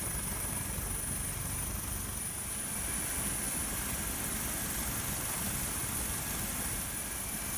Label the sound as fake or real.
real